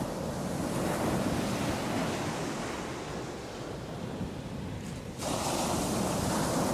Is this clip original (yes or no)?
yes